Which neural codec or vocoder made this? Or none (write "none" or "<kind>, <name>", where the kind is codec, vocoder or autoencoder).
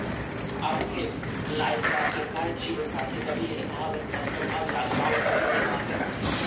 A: none